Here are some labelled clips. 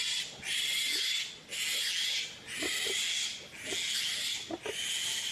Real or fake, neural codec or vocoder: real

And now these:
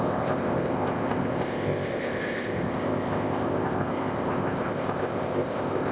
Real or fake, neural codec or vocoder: fake, codec, ZipCodec